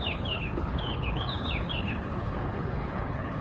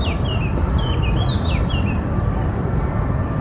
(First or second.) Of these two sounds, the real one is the second